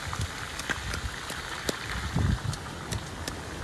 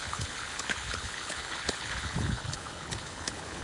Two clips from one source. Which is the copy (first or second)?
second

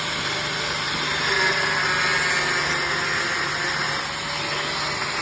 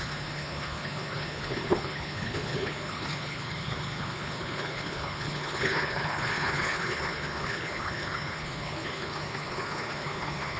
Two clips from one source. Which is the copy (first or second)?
second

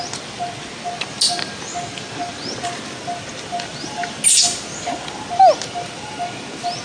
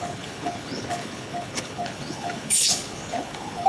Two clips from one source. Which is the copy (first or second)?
second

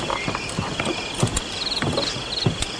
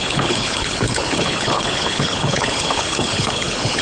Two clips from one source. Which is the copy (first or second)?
second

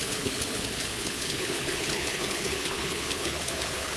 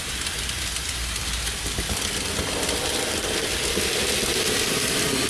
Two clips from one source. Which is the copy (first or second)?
first